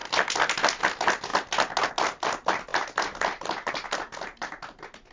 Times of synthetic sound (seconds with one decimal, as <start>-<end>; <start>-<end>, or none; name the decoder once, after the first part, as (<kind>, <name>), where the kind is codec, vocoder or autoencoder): none